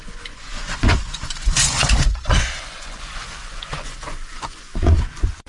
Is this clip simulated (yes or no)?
yes